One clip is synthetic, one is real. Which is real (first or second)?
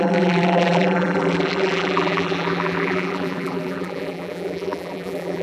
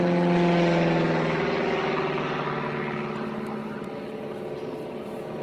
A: second